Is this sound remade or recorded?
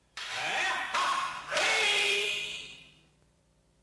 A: remade